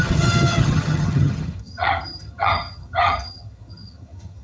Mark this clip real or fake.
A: fake